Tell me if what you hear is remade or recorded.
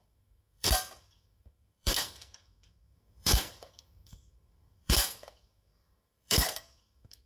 remade